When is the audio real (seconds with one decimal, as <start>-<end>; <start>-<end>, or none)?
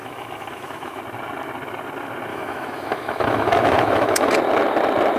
1.0-2.3; 4.3-5.2